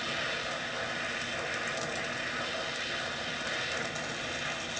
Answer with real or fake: real